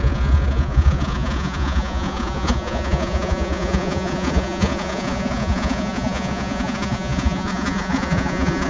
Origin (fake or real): fake